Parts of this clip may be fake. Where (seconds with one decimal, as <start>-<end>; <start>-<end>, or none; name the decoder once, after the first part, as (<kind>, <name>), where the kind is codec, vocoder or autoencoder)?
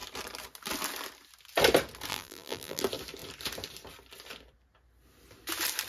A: 2.1-2.8 (vocoder, BigVGAN v2)